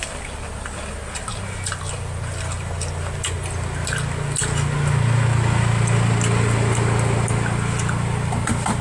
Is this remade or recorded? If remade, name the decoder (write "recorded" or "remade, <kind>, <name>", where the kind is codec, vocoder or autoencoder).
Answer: recorded